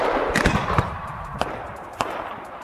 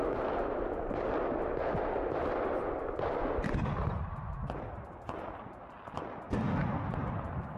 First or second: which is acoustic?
second